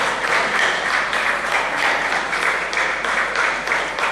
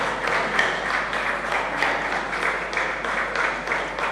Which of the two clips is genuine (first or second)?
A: second